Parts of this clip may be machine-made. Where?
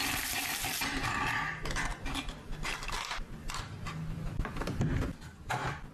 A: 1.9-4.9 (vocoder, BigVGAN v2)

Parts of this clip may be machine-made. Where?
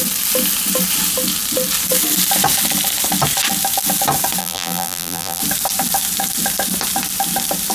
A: 4.4-5.4 (vocoder, BigVGAN v2)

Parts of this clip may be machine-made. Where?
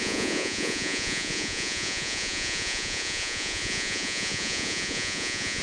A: 0.0-5.6 (vocoder, Vocos)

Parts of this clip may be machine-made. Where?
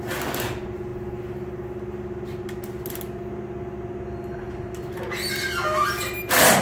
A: none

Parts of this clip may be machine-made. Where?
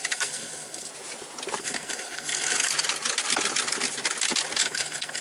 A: 0.0-0.9 (codec, SNAC); 1.6-2.7; 4.6-5.2